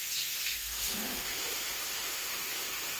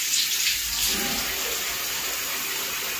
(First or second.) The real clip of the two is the second